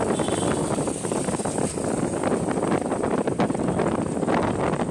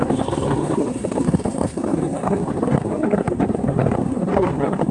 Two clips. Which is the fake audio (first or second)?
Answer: second